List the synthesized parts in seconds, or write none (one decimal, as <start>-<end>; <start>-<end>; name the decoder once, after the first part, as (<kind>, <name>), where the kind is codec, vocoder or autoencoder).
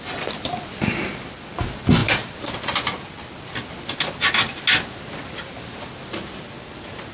none